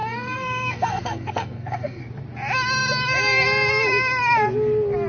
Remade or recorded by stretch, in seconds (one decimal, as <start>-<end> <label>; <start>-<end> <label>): 0.0-2.0 remade; 2.0-5.1 recorded